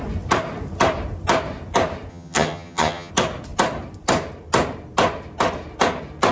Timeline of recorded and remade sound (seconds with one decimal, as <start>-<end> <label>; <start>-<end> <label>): 0.0-2.1 recorded; 2.1-3.1 remade; 3.1-6.3 recorded